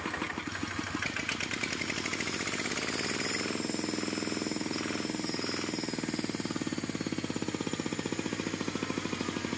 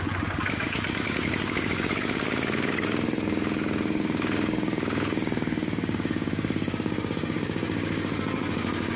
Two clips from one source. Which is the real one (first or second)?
first